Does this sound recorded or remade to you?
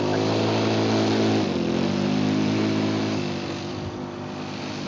recorded